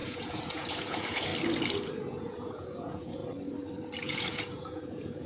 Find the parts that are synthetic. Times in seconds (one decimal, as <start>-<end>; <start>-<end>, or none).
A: 0.0-1.3; 1.9-3.2; 4.0-5.3